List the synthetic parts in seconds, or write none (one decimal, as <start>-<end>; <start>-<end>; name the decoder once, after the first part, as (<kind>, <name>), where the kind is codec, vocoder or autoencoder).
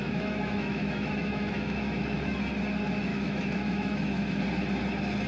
0.0-2.4 (autoencoder, DAC-VAE); 3.1-4.4